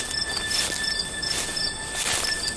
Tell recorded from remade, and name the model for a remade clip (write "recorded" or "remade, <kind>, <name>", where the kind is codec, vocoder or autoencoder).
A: recorded